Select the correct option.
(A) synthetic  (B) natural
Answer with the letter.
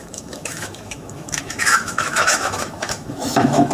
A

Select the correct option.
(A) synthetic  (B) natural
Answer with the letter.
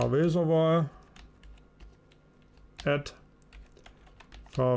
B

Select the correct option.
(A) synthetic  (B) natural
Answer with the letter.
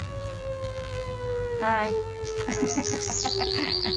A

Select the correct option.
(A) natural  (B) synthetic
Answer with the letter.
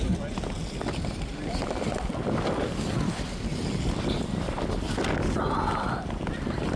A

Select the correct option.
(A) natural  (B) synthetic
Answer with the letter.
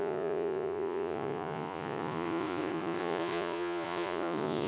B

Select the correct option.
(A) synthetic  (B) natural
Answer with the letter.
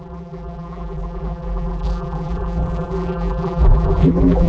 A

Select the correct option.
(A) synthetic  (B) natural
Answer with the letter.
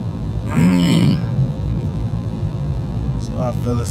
A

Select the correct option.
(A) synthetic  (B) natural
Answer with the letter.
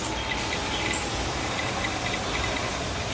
B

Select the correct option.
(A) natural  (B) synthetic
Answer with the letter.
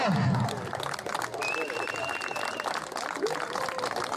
A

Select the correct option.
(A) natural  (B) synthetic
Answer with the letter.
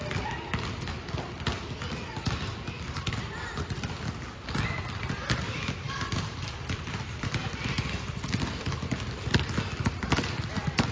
A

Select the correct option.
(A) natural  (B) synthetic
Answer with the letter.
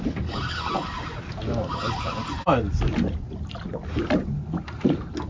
A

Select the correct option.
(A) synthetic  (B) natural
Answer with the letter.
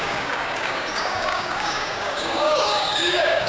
A